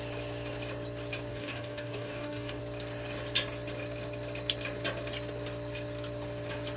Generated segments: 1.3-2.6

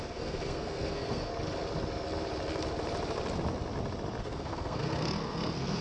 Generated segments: 0.0-1.3; 4.2-5.8

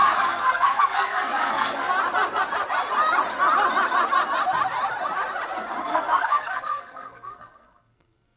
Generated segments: 0.0-1.9; 5.8-8.4

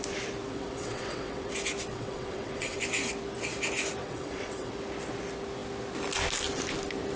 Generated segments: 0.5-1.5; 1.9-2.8; 4.0-4.7

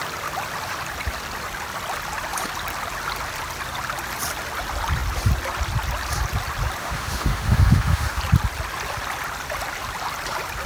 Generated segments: 6.8-8.2

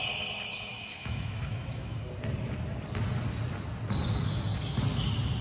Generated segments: 0.7-2.1

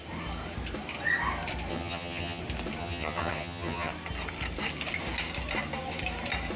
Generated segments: 1.7-2.4; 2.8-3.9